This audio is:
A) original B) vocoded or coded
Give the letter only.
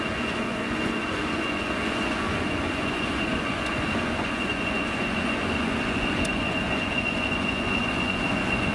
B